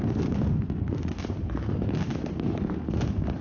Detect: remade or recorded recorded